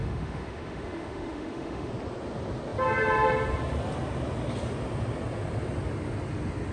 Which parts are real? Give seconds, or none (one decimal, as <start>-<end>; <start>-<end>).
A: 1.9-6.7